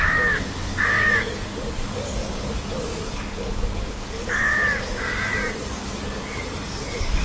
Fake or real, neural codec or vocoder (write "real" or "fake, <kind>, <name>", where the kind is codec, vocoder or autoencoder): fake, codec, DAC